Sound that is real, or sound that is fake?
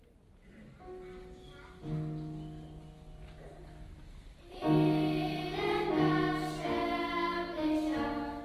real